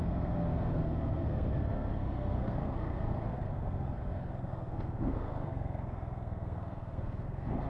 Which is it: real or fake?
fake